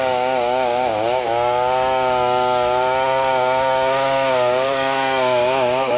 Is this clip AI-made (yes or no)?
yes